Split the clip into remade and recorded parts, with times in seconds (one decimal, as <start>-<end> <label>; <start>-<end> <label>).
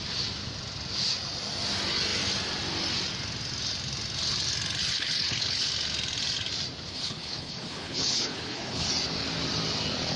0.0-4.8 recorded; 4.8-5.7 remade; 5.7-6.9 recorded; 6.9-8.9 remade; 8.9-10.2 recorded